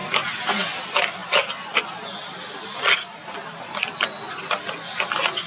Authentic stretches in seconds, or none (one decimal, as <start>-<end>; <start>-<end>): 0.0-5.5